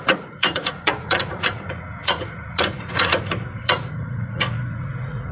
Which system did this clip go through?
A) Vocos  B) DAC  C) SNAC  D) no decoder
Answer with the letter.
A